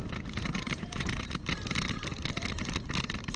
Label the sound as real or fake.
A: fake